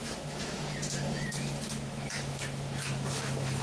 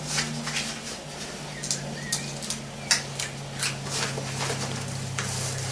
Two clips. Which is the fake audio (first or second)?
first